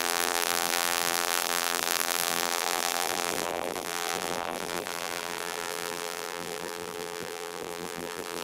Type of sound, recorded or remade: remade